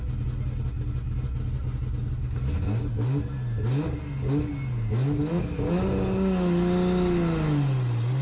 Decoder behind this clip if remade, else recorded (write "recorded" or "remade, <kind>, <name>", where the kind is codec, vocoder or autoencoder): recorded